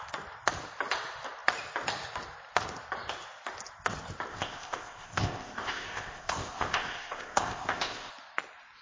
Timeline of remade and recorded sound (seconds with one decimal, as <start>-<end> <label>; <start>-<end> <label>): 0.0-4.3 recorded; 4.3-8.1 remade; 8.1-8.8 recorded